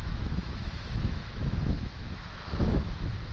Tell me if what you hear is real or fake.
fake